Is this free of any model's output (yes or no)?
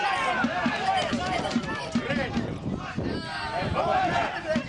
no